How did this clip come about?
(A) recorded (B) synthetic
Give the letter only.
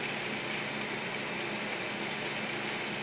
A